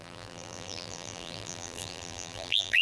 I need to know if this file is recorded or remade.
remade